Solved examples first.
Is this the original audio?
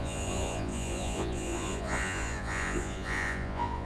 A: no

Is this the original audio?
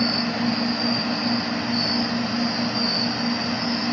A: yes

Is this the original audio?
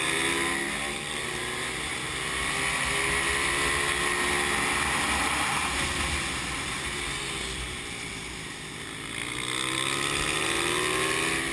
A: yes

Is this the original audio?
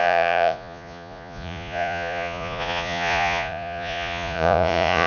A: no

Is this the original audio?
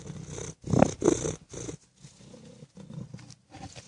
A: yes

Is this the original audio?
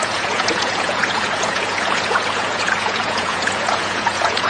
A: no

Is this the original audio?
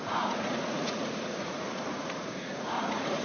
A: no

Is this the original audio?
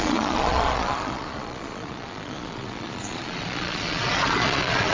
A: no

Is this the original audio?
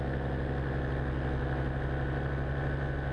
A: yes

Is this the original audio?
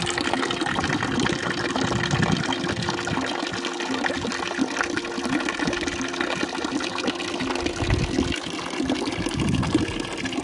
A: yes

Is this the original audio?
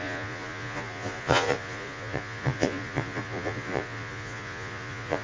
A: no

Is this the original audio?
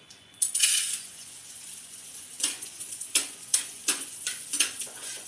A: no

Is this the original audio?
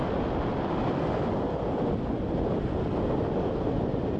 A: yes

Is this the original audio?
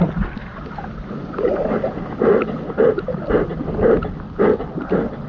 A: yes